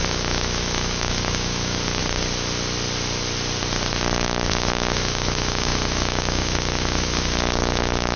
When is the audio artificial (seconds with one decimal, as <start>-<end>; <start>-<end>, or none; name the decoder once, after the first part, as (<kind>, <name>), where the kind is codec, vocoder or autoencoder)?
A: 0.0-2.0 (autoencoder, DAC-VAE); 4.5-8.2